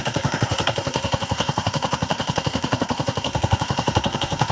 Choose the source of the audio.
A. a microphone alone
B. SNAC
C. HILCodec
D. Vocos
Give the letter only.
B